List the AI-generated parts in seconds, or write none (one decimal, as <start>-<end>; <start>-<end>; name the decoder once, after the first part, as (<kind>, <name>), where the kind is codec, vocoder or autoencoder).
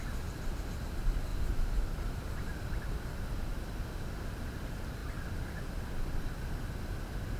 1.3-2.7 (vocoder, BigVGAN v2); 5.0-5.8